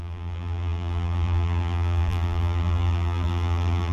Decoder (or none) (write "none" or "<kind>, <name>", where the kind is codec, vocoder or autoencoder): vocoder, BigVGAN v2